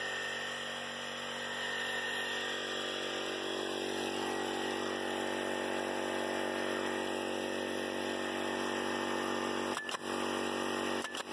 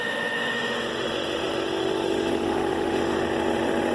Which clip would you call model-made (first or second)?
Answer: second